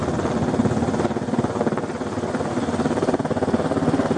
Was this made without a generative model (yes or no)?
yes